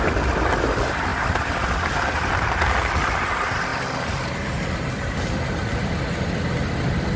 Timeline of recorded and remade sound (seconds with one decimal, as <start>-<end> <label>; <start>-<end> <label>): 0.0-7.2 recorded